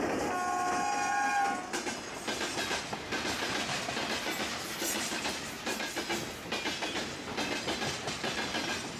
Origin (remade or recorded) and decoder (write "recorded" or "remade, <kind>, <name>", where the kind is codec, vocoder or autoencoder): recorded